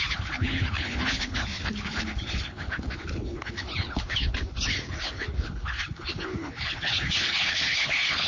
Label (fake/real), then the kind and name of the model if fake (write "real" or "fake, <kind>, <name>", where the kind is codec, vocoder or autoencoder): fake, codec, HILCodec